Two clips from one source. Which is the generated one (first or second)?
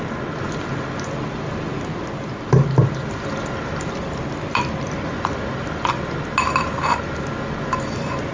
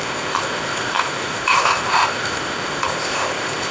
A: second